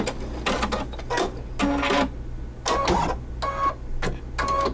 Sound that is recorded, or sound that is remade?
recorded